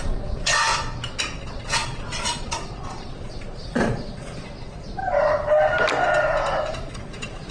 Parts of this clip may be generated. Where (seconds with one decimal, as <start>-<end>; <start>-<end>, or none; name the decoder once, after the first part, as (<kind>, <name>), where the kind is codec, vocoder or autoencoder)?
0.0-0.7 (vocoder, Vocos); 1.2-5.0; 6.9-7.5

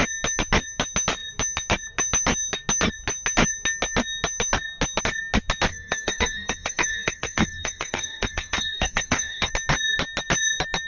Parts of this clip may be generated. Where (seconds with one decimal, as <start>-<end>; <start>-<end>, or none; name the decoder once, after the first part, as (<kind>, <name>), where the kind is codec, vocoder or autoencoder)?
5.7-9.5 (codec, SNAC)